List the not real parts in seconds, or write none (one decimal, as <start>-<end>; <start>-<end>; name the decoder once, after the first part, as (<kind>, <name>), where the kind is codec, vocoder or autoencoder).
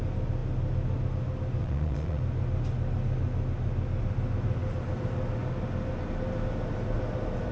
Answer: 1.6-2.2 (vocoder, Vocos)